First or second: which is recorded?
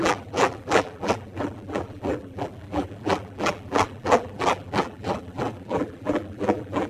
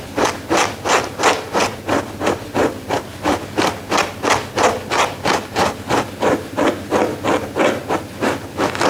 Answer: second